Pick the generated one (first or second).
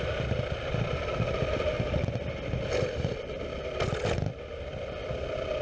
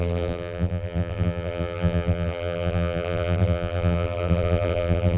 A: second